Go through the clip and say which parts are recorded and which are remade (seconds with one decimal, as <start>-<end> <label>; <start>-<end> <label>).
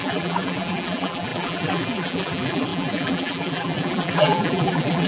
0.0-5.1 remade